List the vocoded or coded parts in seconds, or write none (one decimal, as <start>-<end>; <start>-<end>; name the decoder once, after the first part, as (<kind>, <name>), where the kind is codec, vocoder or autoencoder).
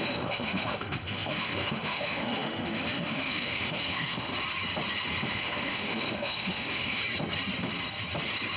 0.0-4.3 (autoencoder, DAC-VAE); 5.3-7.0